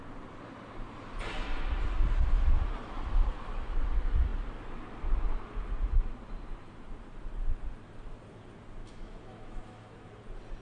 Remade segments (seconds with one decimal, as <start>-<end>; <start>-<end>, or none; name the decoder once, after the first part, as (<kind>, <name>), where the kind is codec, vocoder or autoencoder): 8.8-10.1 (autoencoder, DAC-VAE)